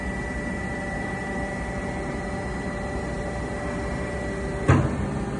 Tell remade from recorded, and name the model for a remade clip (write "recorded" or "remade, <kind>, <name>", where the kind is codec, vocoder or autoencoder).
recorded